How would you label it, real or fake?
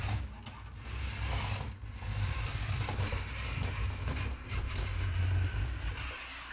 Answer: real